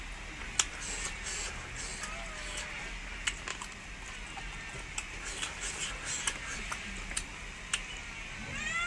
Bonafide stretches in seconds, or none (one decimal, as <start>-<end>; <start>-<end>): 0.0-8.9